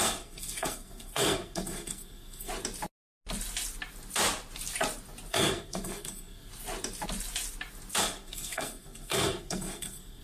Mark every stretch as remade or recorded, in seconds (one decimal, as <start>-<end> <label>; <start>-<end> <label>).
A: 0.0-2.5 remade; 2.5-5.3 recorded; 5.3-6.5 remade; 6.5-8.0 recorded; 8.0-10.2 remade